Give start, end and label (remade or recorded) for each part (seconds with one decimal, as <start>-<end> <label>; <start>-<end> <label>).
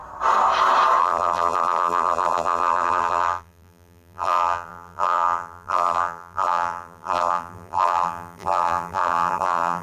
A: 0.0-1.0 recorded; 1.0-9.8 remade